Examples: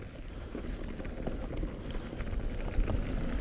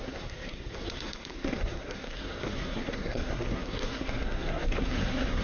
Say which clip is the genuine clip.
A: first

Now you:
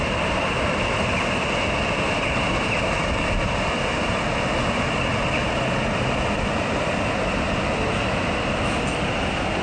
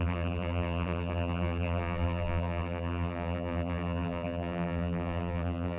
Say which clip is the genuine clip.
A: first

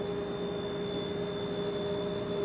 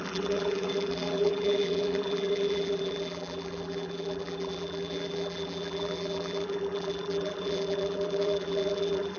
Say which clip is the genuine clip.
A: first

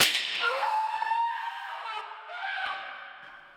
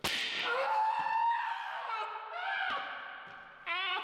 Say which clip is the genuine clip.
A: second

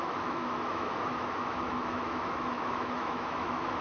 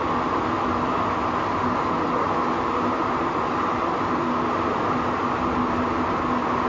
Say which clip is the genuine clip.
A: second